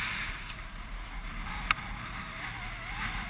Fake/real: real